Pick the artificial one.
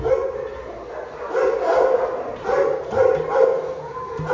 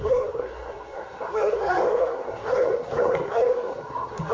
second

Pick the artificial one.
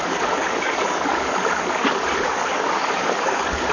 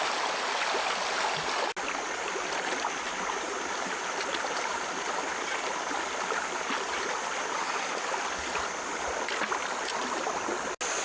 first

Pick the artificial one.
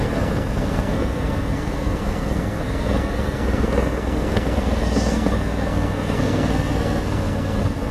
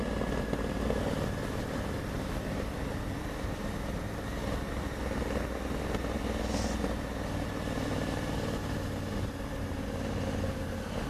first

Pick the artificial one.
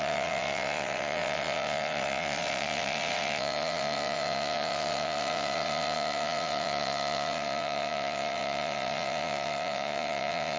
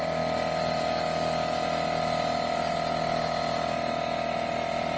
first